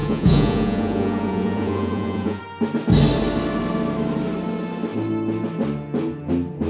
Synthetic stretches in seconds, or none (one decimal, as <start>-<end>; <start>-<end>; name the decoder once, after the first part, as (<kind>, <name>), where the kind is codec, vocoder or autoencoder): 0.0-2.4 (vocoder, Vocos)